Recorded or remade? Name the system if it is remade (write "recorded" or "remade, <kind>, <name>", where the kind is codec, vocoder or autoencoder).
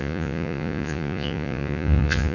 remade, vocoder, Vocos